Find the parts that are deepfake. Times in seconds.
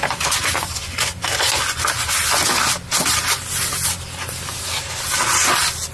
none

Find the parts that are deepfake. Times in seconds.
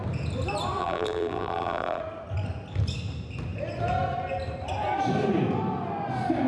0.8-2.0 (vocoder, BigVGAN v2)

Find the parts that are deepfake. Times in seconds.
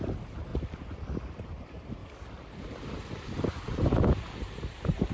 0.0-0.5 (vocoder, BigVGAN v2); 1.4-2.0; 2.9-5.1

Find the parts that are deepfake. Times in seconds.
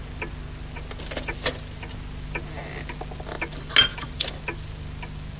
3.9-4.4 (vocoder, BigVGAN v2)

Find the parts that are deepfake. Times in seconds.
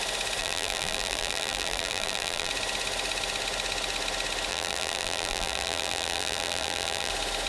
0.4-2.5 (vocoder, BigVGAN v2); 4.5-7.1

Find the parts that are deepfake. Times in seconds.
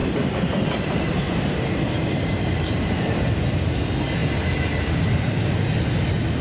0.0-3.8 (vocoder, BigVGAN v2)